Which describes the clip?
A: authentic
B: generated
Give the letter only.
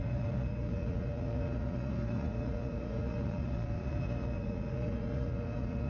B